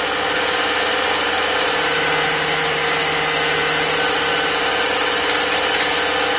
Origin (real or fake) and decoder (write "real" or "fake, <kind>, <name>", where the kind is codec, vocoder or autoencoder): real